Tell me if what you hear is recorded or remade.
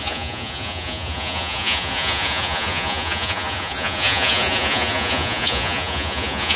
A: remade